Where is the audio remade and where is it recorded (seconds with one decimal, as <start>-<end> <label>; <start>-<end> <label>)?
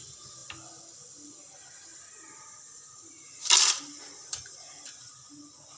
0.0-1.9 recorded; 1.9-5.1 remade; 5.1-5.8 recorded